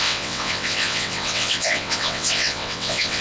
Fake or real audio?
fake